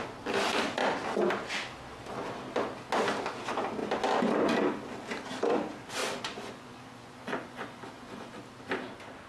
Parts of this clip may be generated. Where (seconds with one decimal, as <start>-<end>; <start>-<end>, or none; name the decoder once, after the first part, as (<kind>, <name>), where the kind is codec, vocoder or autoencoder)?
6.0-8.4 (vocoder, Vocos)